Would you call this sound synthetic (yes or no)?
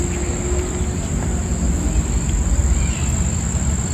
no